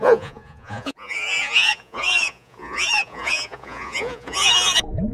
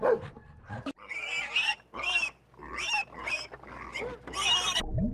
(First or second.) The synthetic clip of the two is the first